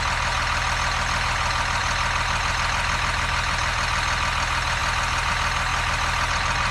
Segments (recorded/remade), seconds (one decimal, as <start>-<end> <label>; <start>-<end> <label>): 0.0-1.8 recorded; 1.8-2.5 remade; 2.5-6.7 recorded